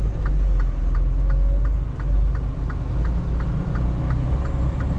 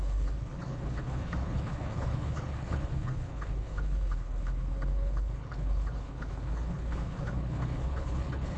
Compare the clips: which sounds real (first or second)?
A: first